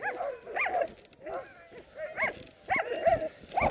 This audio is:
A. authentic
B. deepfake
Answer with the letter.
A